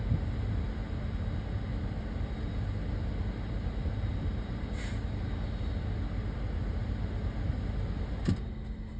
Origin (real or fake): real